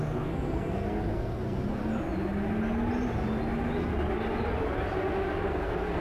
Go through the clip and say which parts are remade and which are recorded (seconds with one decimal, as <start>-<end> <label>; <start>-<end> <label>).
0.0-1.8 remade; 1.8-5.4 recorded; 5.4-6.0 remade